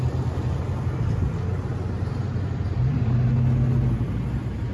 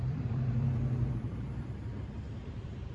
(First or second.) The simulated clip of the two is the second